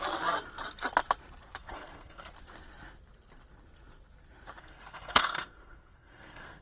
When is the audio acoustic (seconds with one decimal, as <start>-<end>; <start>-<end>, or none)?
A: 0.0-1.6; 2.3-4.6